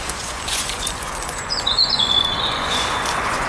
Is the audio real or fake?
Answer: fake